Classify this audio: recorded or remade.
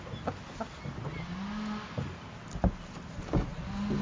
recorded